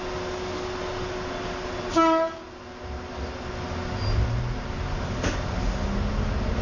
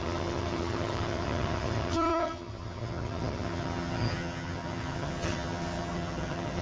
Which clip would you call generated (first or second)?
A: second